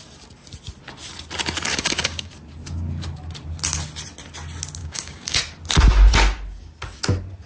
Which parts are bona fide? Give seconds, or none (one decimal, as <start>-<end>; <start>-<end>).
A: 0.0-1.7; 2.3-4.8; 5.4-7.5